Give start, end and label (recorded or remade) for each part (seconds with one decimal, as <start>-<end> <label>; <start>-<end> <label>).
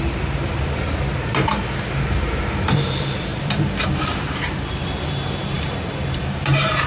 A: 0.0-6.9 remade